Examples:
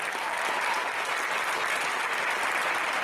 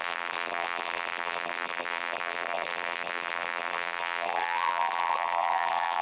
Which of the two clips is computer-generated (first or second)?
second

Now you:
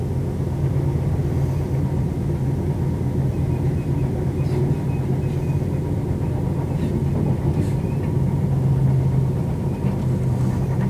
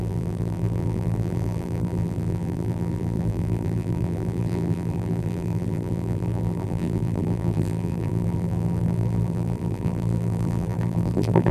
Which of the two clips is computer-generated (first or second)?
second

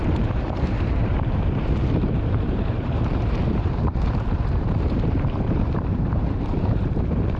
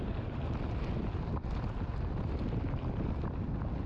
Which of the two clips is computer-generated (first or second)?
first